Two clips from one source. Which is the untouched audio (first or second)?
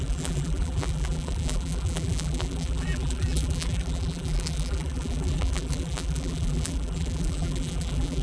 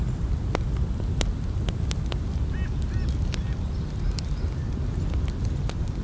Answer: second